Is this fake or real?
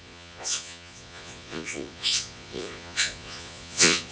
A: fake